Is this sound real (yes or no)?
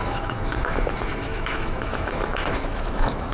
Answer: no